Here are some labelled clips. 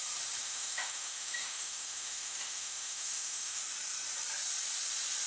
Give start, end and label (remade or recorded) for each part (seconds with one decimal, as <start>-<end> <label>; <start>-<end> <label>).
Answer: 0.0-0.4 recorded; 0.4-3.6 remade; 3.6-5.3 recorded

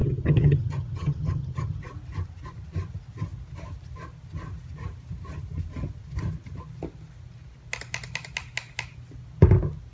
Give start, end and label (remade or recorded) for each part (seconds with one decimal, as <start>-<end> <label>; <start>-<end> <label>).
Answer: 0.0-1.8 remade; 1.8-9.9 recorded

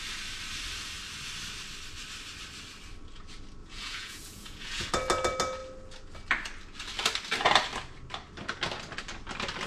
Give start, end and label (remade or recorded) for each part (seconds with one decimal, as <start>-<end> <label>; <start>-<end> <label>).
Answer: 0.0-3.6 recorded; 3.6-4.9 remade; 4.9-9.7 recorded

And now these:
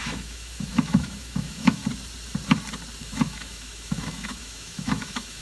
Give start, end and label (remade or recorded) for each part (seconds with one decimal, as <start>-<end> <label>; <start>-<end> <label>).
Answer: 0.0-1.8 remade; 1.8-3.0 recorded; 3.0-5.4 remade